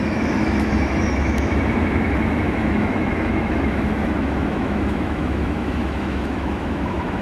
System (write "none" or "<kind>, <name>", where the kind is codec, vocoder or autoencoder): autoencoder, DAC-VAE